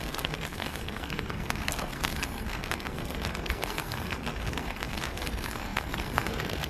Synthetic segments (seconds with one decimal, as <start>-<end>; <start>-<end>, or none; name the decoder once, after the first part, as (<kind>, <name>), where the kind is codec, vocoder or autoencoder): 0.0-6.7 (codec, SNAC)